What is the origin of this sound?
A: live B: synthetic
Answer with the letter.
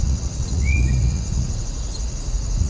B